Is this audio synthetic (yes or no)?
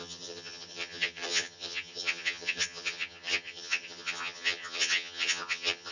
yes